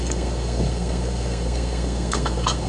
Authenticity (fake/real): fake